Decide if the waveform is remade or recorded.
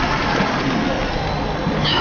recorded